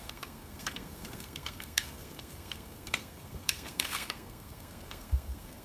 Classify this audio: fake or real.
fake